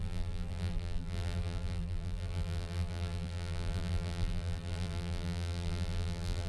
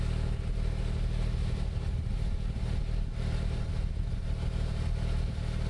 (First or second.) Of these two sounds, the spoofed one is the first